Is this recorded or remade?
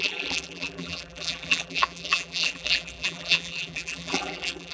remade